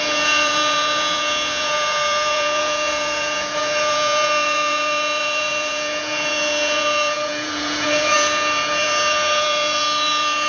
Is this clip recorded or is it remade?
remade